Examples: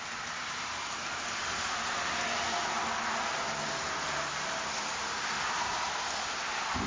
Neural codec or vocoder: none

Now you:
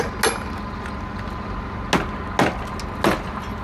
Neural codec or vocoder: none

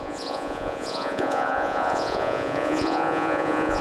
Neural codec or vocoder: vocoder, Vocos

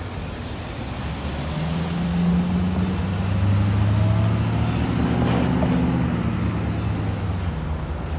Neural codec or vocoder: none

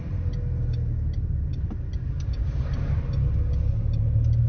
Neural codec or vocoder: none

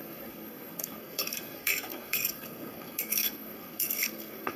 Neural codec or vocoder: codec, SNAC